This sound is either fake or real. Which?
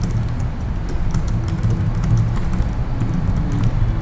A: real